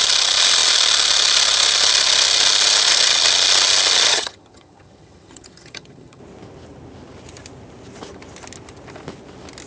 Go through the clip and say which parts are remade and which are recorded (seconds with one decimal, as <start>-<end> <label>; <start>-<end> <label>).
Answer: 0.0-4.1 recorded; 4.1-6.2 remade; 6.2-9.7 recorded